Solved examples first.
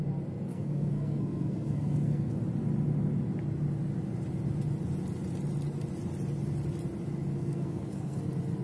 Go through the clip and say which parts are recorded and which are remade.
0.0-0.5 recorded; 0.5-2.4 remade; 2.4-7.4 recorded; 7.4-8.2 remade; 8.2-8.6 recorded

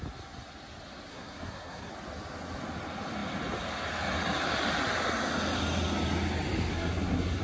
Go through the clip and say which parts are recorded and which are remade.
0.0-1.1 recorded; 1.1-1.9 remade; 1.9-6.7 recorded; 6.7-7.4 remade

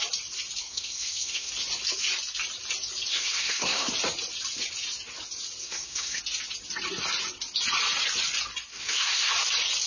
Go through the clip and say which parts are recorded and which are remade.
0.0-0.6 recorded; 0.6-1.5 remade; 1.5-3.1 recorded; 3.1-3.9 remade; 3.9-5.6 recorded; 5.6-6.2 remade; 6.2-8.7 recorded; 8.7-9.3 remade; 9.3-9.9 recorded

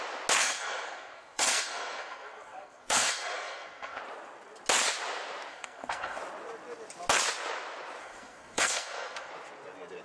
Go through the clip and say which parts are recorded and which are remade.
0.0-0.4 recorded; 0.4-4.0 remade; 4.0-5.5 recorded; 5.5-6.2 remade; 6.2-8.0 recorded; 8.0-9.3 remade; 9.3-10.0 recorded

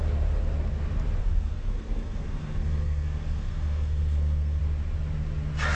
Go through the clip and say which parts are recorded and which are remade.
0.0-1.2 recorded; 1.2-4.6 remade; 4.6-5.7 recorded